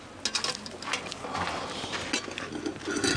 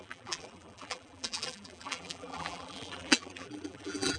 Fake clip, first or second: second